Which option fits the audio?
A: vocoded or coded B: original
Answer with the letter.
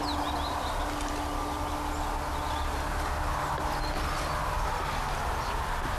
B